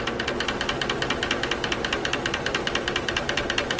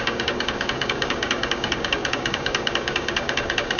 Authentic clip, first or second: first